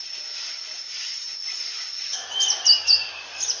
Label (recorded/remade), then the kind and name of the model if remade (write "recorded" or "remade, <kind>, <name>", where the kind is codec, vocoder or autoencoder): recorded